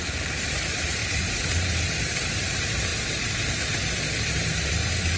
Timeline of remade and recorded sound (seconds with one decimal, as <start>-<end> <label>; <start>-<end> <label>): 0.0-5.2 remade